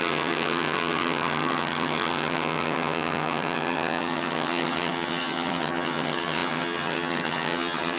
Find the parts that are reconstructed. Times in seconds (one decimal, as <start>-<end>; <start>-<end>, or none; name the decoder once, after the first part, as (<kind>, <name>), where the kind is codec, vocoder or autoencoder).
0.0-8.0 (vocoder, HiFi-GAN)